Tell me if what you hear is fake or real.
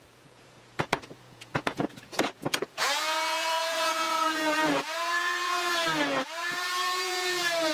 fake